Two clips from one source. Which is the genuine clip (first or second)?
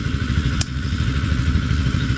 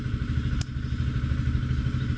second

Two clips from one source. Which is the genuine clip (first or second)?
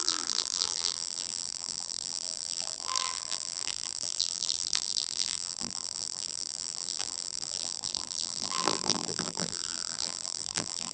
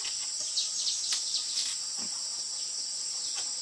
second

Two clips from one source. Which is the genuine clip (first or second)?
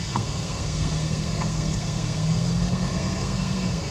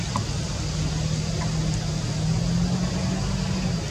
second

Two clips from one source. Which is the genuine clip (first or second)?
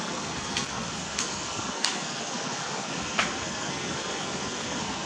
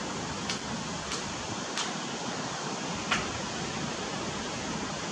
second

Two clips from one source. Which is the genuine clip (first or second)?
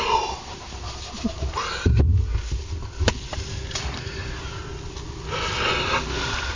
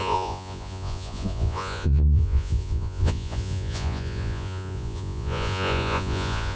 first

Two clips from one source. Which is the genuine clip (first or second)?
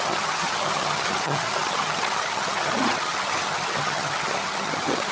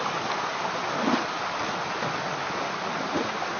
second